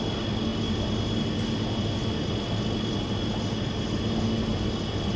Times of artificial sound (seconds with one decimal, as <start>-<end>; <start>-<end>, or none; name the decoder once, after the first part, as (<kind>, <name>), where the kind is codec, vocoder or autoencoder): none